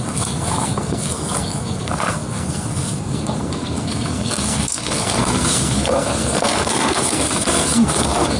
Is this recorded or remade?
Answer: remade